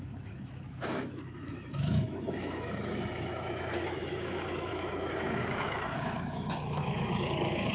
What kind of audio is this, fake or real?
fake